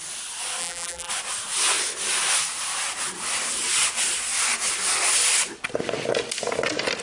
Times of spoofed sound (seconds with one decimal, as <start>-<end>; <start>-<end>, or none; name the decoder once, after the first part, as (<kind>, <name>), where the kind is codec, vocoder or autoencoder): 0.6-1.1 (vocoder, BigVGAN v2)